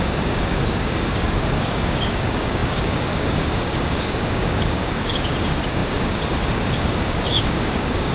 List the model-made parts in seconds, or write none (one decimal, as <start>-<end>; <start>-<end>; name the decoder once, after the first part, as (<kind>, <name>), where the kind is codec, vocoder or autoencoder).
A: 0.0-8.1 (codec, DAC)